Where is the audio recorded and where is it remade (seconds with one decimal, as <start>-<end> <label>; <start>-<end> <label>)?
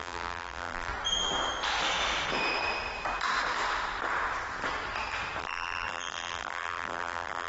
0.0-0.9 remade; 0.9-5.4 recorded; 5.4-7.5 remade